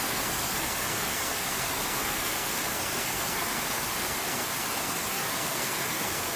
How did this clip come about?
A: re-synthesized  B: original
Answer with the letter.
A